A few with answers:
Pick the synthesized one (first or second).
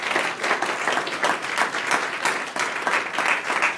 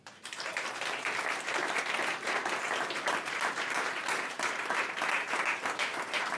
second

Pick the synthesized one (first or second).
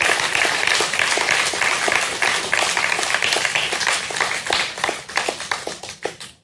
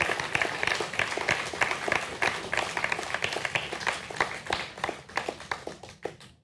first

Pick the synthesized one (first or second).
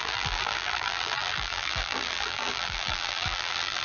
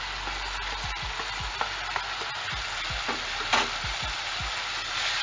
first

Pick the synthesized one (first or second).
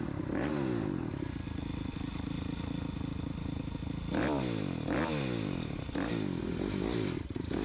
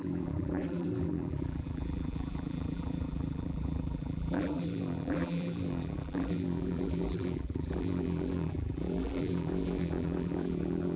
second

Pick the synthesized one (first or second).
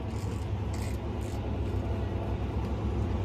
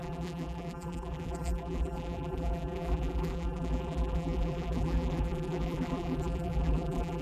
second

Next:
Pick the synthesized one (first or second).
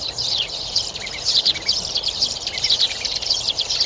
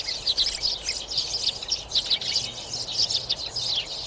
first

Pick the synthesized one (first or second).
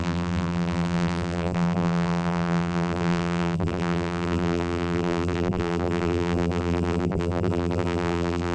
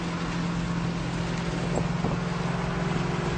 first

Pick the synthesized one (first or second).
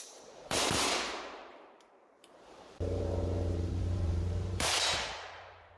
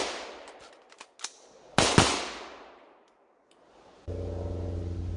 first